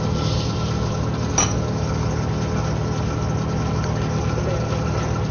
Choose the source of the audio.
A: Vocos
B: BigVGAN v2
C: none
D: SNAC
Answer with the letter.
C